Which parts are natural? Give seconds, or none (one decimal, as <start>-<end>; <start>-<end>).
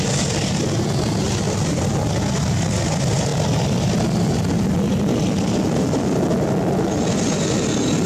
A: 0.0-8.1